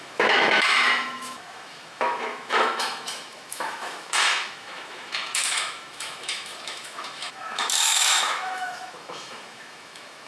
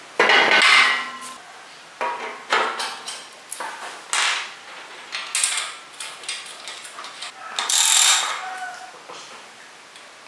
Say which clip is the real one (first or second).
second